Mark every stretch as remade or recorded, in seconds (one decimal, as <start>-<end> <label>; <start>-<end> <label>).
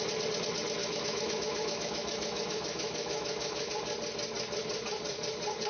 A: 0.0-0.8 recorded; 0.8-3.7 remade; 3.7-5.7 recorded